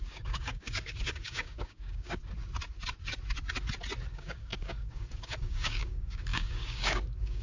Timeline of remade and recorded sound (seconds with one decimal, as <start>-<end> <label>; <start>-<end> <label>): 0.0-2.2 remade; 2.2-4.1 recorded; 4.1-7.4 remade